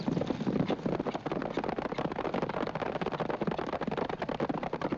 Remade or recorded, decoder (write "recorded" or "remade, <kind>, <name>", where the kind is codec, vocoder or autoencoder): recorded